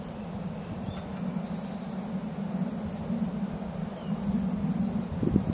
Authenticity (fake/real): real